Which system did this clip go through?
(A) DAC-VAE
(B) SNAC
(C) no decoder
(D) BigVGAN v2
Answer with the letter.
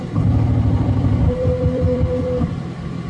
D